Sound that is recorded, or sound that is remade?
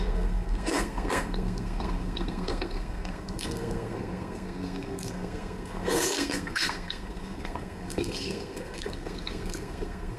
remade